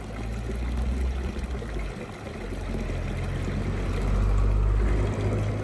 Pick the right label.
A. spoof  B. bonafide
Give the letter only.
B